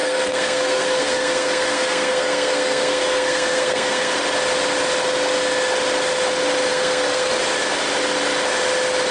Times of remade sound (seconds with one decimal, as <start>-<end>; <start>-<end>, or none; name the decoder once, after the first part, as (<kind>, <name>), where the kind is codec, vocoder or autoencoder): 0.0-4.1 (codec, SNAC); 6.7-7.3